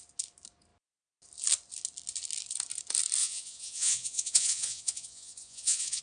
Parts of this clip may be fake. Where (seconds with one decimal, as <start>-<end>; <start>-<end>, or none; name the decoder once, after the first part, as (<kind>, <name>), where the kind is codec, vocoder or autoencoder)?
3.2-6.0 (vocoder, Vocos)